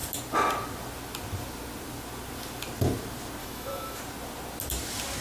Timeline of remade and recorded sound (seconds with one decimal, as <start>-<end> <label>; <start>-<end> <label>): 0.0-3.4 recorded; 3.4-4.0 remade; 4.0-5.2 recorded